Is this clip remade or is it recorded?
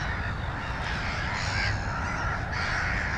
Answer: recorded